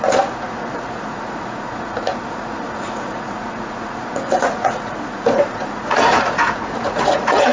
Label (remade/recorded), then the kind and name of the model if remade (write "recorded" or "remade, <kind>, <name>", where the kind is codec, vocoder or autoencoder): remade, vocoder, Vocos